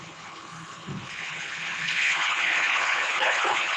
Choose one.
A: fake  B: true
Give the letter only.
A